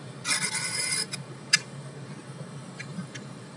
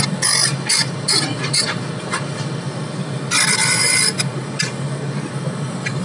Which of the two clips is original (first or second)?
second